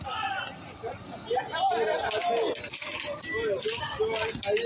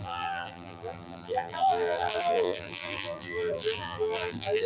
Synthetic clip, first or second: second